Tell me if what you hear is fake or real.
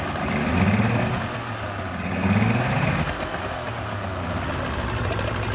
real